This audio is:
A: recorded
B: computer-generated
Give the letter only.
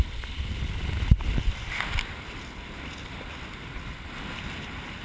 A